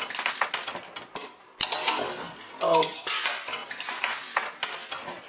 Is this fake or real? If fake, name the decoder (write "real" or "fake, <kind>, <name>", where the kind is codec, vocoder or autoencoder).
real